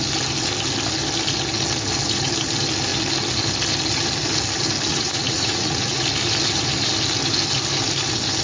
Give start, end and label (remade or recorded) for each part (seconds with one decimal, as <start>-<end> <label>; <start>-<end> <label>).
0.0-4.9 recorded; 4.9-6.0 remade; 6.0-8.4 recorded